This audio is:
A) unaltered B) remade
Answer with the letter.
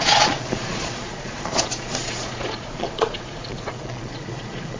B